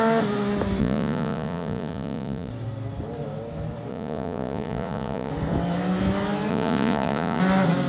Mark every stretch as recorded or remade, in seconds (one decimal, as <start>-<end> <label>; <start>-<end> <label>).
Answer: 0.0-0.8 recorded; 0.8-2.5 remade; 2.5-3.9 recorded; 3.9-5.3 remade; 5.3-6.5 recorded; 6.5-7.4 remade; 7.4-7.9 recorded